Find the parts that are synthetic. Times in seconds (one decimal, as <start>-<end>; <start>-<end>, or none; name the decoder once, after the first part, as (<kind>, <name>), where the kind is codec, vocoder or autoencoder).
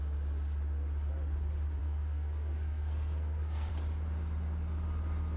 1.8-3.7 (codec, SNAC)